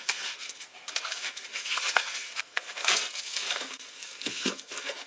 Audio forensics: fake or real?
fake